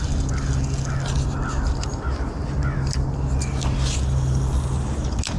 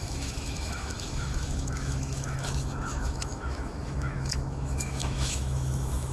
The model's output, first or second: second